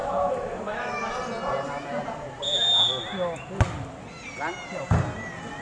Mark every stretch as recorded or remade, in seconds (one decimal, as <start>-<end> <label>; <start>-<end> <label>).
0.0-1.1 remade; 1.1-5.6 recorded